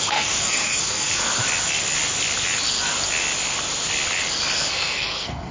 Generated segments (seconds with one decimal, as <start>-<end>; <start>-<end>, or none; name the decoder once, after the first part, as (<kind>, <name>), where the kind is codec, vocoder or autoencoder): 0.0-1.4 (codec, SNAC); 4.7-5.5